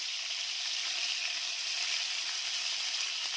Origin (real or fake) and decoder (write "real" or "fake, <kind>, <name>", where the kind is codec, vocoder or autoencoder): real